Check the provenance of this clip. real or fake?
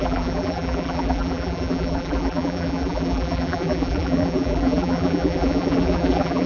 fake